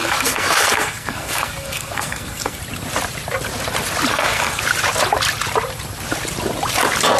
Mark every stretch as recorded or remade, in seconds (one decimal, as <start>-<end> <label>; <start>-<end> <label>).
0.0-2.6 remade; 2.6-4.1 recorded; 4.1-4.6 remade; 4.6-7.2 recorded